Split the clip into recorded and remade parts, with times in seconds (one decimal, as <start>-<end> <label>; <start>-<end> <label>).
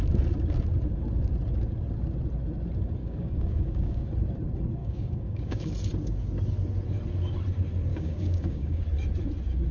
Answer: 0.0-3.0 recorded; 3.0-4.1 remade; 4.1-4.8 recorded; 4.8-5.7 remade; 5.7-7.9 recorded; 7.9-8.8 remade; 8.8-9.7 recorded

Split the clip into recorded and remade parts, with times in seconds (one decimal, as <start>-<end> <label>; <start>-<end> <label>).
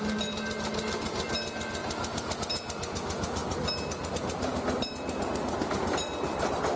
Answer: 0.0-4.5 recorded; 4.5-5.7 remade; 5.7-6.8 recorded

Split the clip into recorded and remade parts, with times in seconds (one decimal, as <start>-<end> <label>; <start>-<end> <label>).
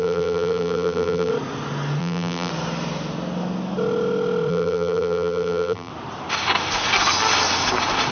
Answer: 0.0-1.3 remade; 1.3-2.0 recorded; 2.0-2.5 remade; 2.5-4.5 recorded; 4.5-5.9 remade; 5.9-8.1 recorded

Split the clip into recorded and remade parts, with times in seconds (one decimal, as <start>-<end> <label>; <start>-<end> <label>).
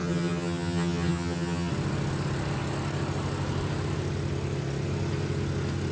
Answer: 0.0-1.7 remade; 1.7-5.9 recorded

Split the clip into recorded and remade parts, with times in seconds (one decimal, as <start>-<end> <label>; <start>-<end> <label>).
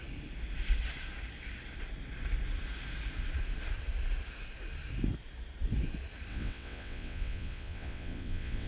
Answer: 0.0-6.3 recorded; 6.3-8.7 remade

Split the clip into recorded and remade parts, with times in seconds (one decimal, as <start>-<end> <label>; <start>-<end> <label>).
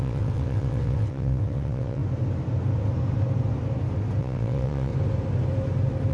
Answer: 0.0-2.0 remade; 2.0-4.2 recorded; 4.2-4.9 remade; 4.9-6.1 recorded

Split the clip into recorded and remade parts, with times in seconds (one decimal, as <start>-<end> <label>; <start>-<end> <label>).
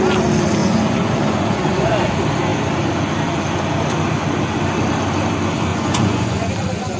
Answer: 0.0-0.6 recorded; 0.6-2.1 remade; 2.1-5.7 recorded; 5.7-6.5 remade; 6.5-7.0 recorded